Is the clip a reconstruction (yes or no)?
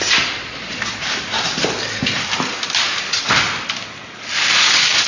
no